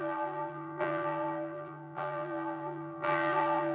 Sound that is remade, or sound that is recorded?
remade